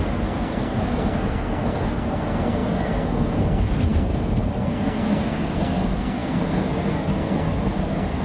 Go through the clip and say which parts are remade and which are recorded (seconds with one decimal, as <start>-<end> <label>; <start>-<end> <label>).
0.0-8.2 remade

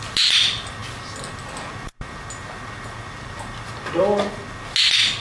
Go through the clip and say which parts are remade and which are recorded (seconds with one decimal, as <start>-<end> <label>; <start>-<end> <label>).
0.0-5.2 recorded

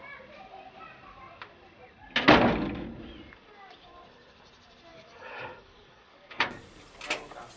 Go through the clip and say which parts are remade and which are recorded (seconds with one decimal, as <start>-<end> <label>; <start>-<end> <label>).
0.0-4.9 recorded; 4.9-6.6 remade; 6.6-7.6 recorded

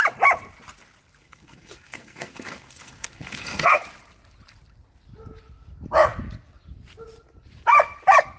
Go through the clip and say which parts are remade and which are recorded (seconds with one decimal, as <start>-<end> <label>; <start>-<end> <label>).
0.0-1.2 recorded; 1.2-3.8 remade; 3.8-8.4 recorded

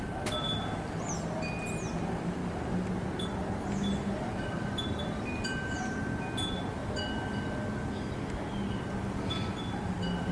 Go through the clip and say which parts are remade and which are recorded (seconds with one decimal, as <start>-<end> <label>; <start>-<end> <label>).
0.0-10.3 recorded